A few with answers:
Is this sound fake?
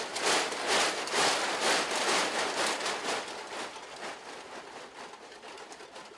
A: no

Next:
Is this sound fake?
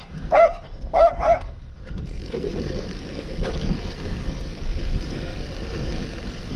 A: yes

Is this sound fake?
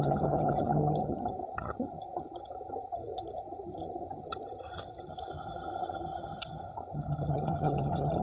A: yes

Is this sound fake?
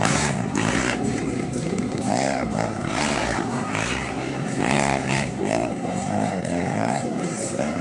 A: yes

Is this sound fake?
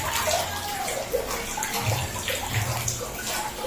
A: no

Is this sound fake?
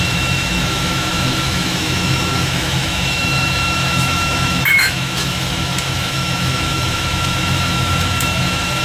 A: yes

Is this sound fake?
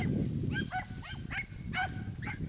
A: no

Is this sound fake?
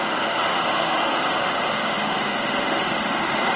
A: yes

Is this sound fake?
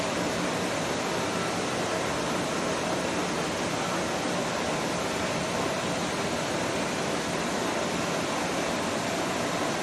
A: no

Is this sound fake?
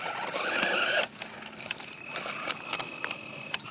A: no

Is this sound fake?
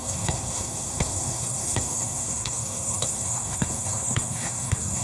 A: yes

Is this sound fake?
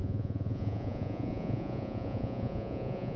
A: yes